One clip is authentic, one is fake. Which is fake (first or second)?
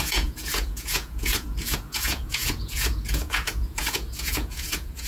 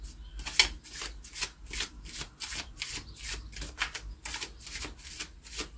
first